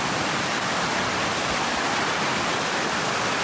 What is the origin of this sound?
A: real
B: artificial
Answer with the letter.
B